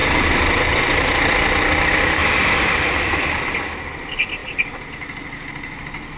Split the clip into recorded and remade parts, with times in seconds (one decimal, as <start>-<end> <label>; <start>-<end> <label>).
0.0-1.4 remade; 1.4-2.2 recorded; 2.2-3.5 remade; 3.5-6.2 recorded